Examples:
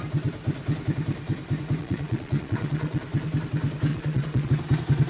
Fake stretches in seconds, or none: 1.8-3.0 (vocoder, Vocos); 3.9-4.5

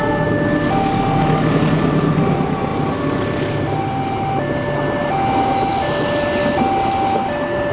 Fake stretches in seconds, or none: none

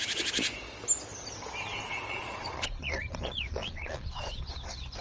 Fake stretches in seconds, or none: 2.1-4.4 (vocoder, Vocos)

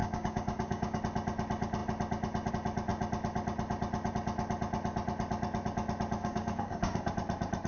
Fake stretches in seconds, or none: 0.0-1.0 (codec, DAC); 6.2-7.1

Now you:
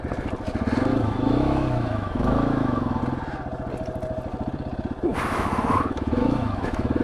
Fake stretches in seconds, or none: 0.9-3.0 (autoencoder, DAC-VAE); 5.1-7.0

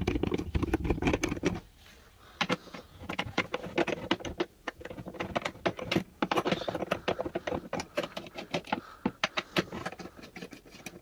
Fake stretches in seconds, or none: 2.6-3.4 (vocoder, Vocos); 4.6-5.3

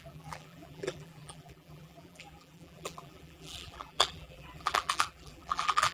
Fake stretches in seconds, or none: 0.0-5.9 (vocoder, BigVGAN v2)

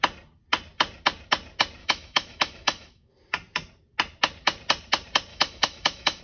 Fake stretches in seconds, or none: 1.8-3.1 (autoencoder, DAC-VAE); 5.3-6.2